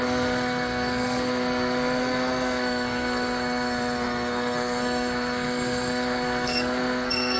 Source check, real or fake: fake